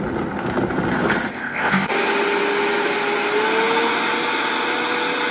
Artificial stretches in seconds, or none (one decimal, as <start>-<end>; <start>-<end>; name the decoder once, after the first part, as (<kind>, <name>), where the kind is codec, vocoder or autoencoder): 1.3-1.9 (codec, ZipCodec)